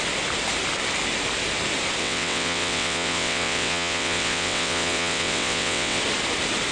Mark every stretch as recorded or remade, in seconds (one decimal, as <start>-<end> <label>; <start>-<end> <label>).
0.0-2.0 recorded; 2.0-6.0 remade; 6.0-6.7 recorded